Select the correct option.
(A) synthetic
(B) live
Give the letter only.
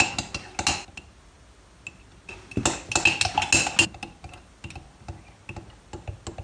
B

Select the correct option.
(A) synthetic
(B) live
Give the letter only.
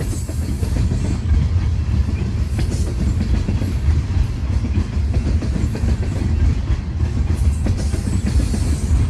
A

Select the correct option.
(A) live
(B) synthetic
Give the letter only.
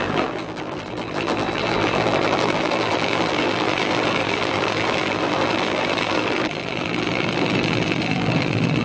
B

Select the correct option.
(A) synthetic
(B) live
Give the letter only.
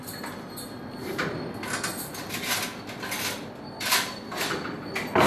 B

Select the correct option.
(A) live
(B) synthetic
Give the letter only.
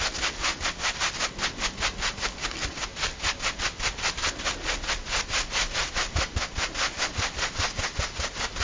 A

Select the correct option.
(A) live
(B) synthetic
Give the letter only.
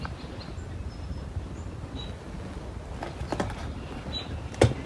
A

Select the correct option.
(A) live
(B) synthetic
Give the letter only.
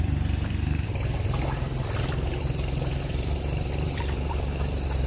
B